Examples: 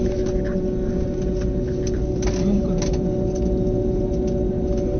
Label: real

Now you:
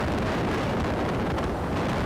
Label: fake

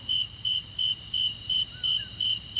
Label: fake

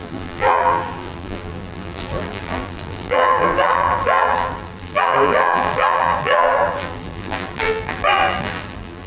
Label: fake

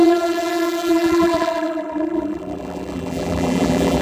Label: fake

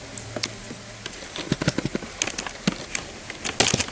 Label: real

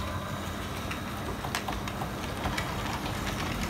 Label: real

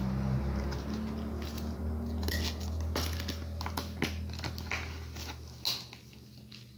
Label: real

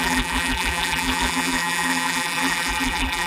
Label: fake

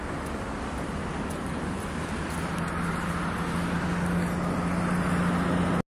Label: real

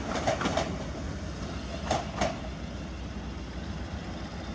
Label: real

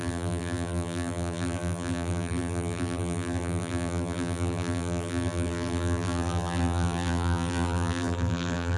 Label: fake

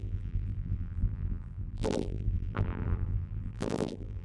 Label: fake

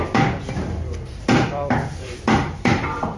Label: fake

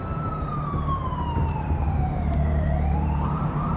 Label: fake